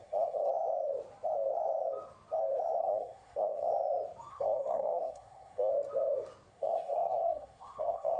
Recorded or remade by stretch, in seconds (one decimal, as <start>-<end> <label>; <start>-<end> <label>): 0.0-0.5 remade; 0.5-2.8 recorded; 2.8-3.7 remade; 3.7-4.3 recorded; 4.3-5.7 remade; 5.7-6.5 recorded; 6.5-8.2 remade